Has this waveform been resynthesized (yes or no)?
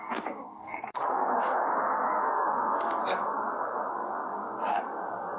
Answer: yes